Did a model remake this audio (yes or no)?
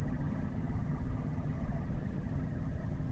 yes